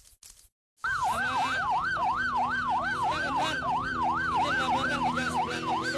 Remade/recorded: recorded